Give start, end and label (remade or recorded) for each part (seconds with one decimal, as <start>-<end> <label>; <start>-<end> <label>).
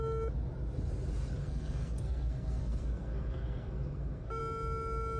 0.0-1.4 recorded; 1.4-4.4 remade; 4.4-5.2 recorded